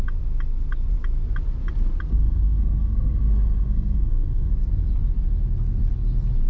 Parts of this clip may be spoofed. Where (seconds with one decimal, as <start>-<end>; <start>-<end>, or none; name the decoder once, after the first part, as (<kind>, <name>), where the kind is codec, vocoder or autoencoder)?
2.1-4.5 (codec, SNAC)